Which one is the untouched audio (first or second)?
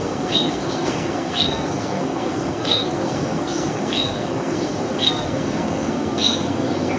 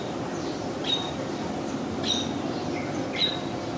second